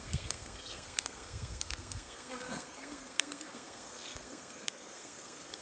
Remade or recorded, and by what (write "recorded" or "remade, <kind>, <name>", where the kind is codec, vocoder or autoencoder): remade, codec, SNAC